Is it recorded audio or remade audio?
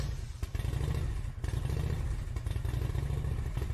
recorded